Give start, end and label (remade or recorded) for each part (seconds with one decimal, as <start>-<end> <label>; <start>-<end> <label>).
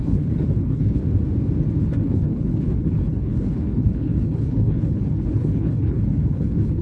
0.0-1.0 remade; 1.0-1.8 recorded; 1.8-6.8 remade